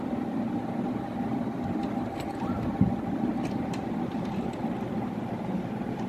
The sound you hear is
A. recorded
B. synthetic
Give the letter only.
A